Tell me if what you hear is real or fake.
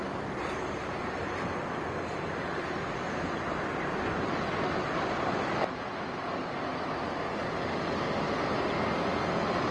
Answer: real